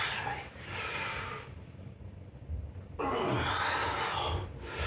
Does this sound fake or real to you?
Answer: real